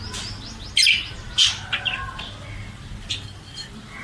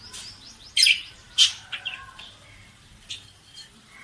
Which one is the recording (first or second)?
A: first